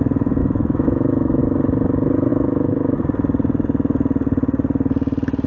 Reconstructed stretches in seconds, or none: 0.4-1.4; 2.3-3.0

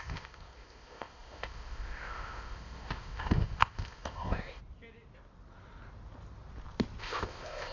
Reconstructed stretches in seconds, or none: 0.0-4.6; 7.0-7.7

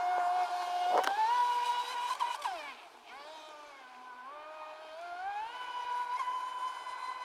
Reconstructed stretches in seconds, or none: none